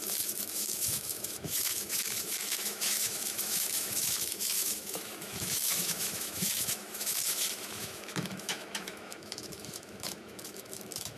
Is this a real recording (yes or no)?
no